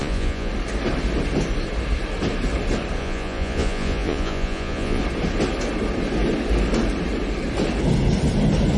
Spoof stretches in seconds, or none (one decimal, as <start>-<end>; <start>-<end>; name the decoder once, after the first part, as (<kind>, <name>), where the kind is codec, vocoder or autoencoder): 0.0-0.5 (vocoder, Vocos); 3.0-5.0